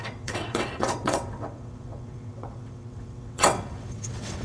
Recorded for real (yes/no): no